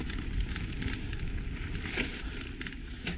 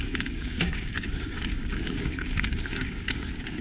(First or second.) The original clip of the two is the first